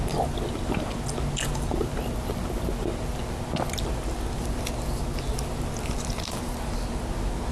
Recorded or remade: recorded